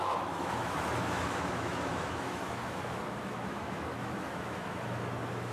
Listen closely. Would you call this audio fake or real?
fake